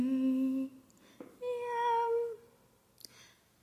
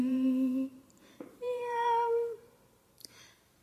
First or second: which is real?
first